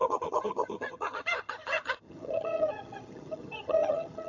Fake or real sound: fake